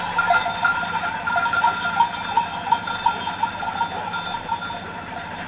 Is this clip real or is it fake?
real